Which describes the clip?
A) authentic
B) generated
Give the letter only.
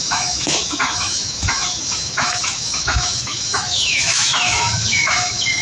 B